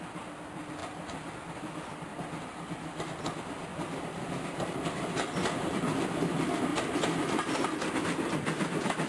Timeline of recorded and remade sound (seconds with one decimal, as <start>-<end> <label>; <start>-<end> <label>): 0.0-3.7 recorded; 3.7-5.8 remade; 5.8-6.7 recorded; 6.7-7.9 remade; 7.9-9.1 recorded